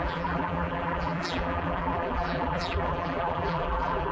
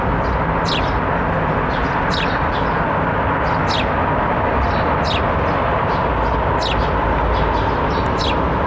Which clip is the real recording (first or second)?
second